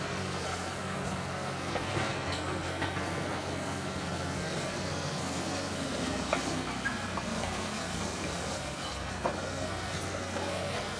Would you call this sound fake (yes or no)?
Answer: yes